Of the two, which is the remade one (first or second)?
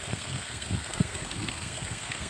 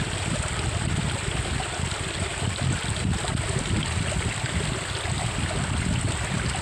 first